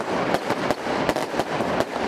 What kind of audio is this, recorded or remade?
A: recorded